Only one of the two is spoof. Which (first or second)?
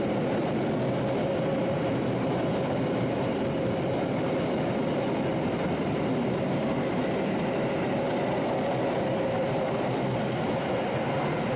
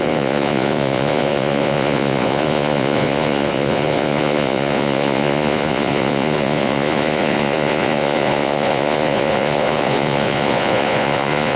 second